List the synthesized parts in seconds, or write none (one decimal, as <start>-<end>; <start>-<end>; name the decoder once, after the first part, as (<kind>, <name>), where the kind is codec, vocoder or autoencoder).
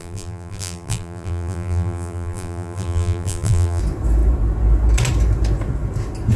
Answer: 0.0-3.8 (vocoder, BigVGAN v2)